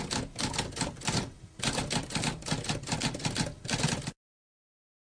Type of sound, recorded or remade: recorded